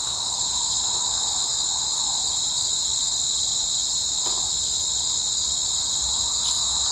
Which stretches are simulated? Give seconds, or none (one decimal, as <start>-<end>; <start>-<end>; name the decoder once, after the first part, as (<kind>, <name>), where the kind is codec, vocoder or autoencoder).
none